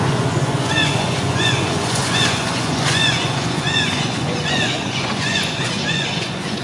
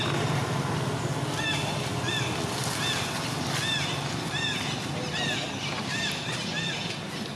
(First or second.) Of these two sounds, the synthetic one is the first